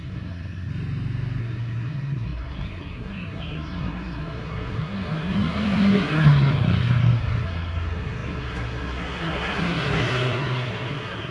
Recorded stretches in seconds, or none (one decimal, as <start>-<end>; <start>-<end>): 0.7-1.4